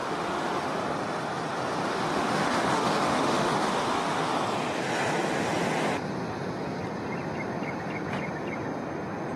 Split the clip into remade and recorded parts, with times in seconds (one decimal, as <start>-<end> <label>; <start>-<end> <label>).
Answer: 0.0-0.8 remade; 0.8-1.9 recorded; 1.9-4.3 remade; 4.3-9.4 recorded